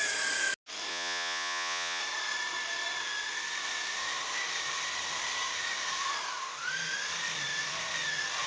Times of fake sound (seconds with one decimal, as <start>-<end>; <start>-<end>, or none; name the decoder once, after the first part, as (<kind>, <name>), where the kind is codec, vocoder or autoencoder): 0.9-2.0 (vocoder, Vocos)